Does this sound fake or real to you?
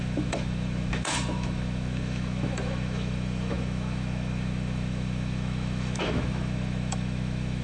fake